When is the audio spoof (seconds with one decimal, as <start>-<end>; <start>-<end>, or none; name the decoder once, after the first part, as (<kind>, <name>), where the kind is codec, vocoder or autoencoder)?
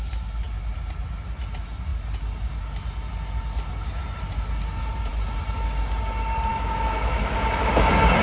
6.5-7.7 (autoencoder, DAC-VAE)